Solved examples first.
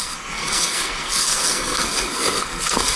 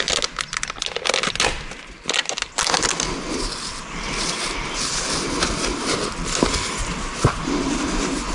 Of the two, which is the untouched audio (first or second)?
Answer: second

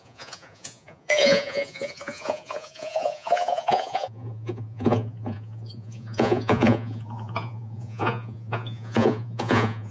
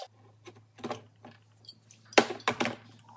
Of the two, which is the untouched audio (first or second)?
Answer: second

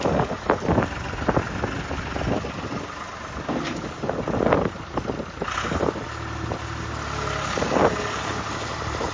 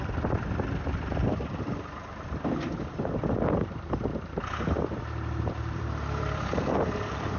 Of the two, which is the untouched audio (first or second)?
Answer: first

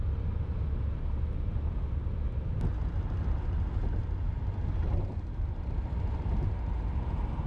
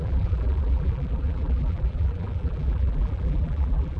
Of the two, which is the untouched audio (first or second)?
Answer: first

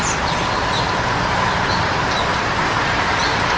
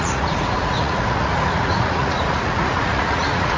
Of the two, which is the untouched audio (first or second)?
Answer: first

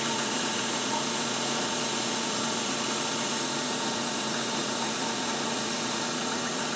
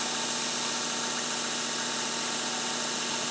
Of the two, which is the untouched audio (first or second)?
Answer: second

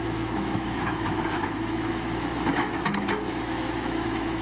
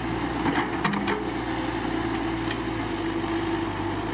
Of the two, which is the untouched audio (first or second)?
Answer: second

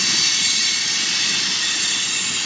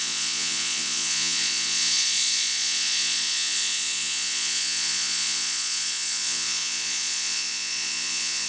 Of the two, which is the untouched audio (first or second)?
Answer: first